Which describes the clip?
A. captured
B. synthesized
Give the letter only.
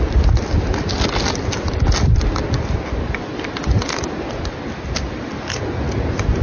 A